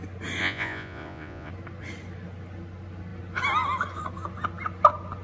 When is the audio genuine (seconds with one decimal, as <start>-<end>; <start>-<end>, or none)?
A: 0.0-0.4; 1.5-5.2